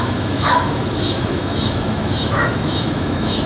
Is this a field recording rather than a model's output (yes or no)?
no